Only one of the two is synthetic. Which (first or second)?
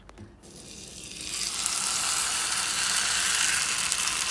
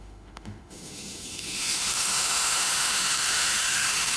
second